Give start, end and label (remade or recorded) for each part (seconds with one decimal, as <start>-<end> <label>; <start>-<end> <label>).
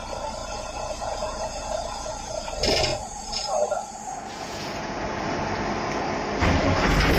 0.0-0.4 recorded; 0.4-2.4 remade; 2.4-2.9 recorded; 2.9-5.2 remade; 5.2-7.2 recorded